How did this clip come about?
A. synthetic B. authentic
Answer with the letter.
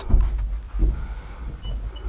B